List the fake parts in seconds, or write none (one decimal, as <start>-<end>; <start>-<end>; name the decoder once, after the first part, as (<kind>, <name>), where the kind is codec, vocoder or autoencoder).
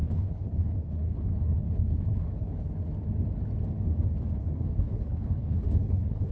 0.0-2.7 (codec, HILCodec); 4.4-6.3